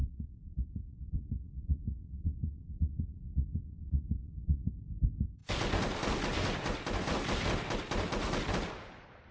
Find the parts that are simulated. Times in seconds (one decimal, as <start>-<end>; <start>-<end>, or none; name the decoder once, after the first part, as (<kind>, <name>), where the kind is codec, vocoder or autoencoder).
0.0-4.7 (vocoder, Vocos)